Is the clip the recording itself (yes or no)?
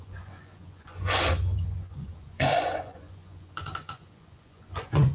no